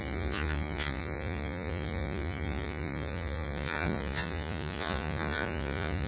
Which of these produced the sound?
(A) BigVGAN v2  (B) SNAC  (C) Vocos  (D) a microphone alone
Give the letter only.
C